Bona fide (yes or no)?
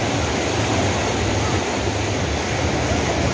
yes